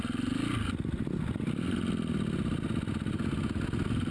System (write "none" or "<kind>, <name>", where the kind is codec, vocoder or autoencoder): none